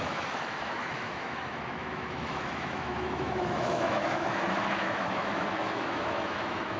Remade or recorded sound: remade